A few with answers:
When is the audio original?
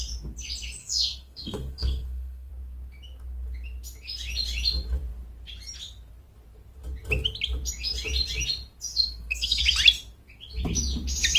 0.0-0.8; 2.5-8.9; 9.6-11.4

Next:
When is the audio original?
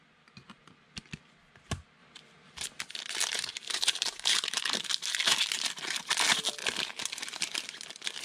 0.0-2.0; 2.8-3.3; 4.9-8.2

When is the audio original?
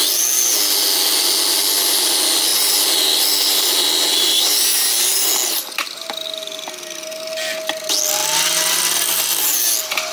0.0-10.1